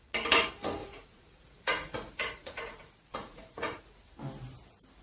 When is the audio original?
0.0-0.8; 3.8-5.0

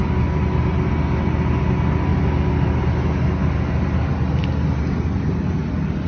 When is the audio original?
0.0-6.1

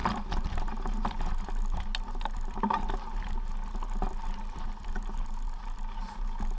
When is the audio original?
0.0-6.6

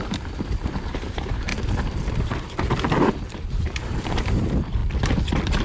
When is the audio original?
1.5-3.1; 4.8-5.6

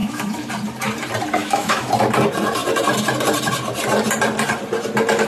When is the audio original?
0.5-1.4; 1.9-5.3

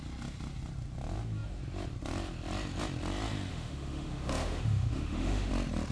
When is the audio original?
0.0-3.5; 5.5-5.9

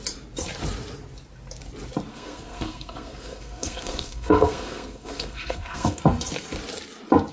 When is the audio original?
0.0-2.1; 6.0-7.3

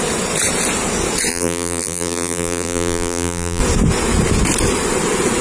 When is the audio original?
0.0-1.3; 3.6-5.4